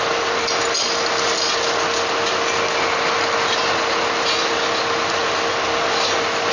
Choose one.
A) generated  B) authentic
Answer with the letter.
B